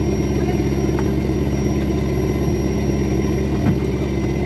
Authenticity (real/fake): real